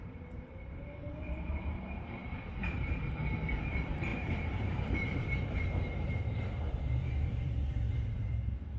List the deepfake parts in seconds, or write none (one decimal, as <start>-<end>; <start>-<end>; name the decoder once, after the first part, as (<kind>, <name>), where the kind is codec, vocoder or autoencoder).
0.0-8.8 (vocoder, BigVGAN v2)